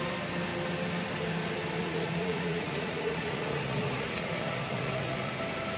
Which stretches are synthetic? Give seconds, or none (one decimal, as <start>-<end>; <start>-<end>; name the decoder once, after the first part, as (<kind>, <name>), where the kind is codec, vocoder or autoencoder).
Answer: 1.8-5.3 (vocoder, Vocos)